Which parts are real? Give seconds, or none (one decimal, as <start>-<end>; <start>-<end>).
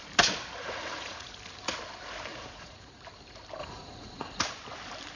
0.0-0.6; 1.3-2.3; 3.0-3.6; 4.4-5.2